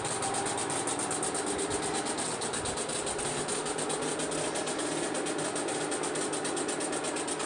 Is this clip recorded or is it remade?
recorded